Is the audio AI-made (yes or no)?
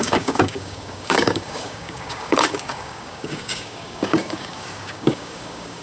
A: yes